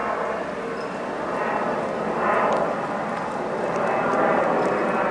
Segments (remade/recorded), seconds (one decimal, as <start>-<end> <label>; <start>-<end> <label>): 0.0-5.1 recorded